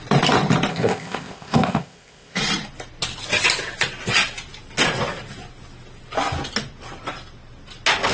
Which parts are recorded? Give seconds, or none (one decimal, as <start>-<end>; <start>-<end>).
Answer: 0.0-0.7; 2.4-8.1